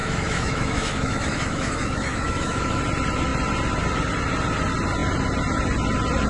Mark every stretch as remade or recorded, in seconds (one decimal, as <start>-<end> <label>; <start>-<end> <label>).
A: 0.0-2.8 remade; 2.8-6.3 recorded